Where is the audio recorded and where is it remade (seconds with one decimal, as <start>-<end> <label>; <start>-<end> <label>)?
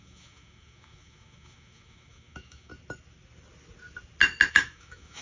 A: 0.0-2.7 remade; 2.7-4.5 recorded; 4.5-5.2 remade